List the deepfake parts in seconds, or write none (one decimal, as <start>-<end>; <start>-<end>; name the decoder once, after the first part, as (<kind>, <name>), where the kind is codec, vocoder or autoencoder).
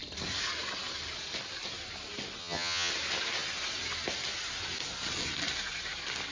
2.4-2.9 (vocoder, HiFi-GAN)